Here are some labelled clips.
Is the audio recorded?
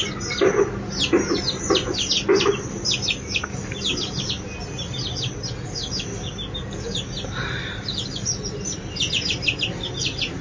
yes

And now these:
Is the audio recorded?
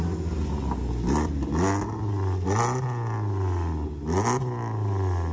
yes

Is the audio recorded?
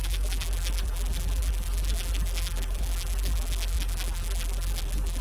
no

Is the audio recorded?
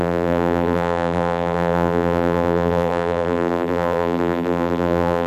no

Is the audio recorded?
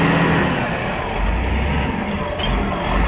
yes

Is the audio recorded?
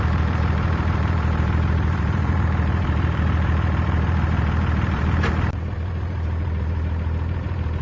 no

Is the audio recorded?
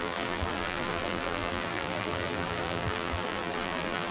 no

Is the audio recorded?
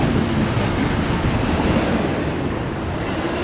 yes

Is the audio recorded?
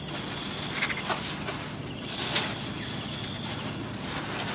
yes